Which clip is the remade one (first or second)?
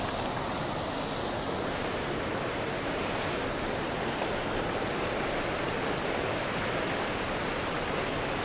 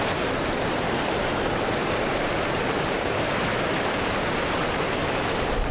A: second